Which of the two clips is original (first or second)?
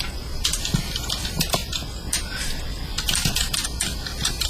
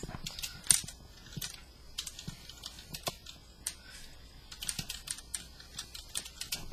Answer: second